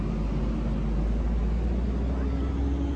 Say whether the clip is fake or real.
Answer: real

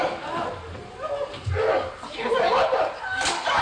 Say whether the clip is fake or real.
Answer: real